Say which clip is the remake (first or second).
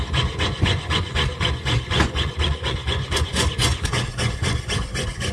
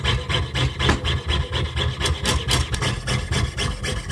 first